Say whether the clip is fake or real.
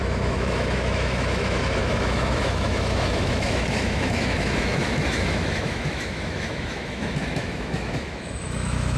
fake